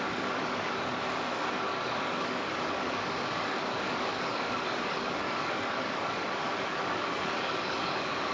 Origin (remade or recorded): remade